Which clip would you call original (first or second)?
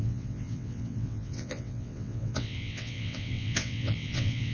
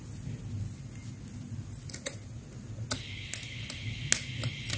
second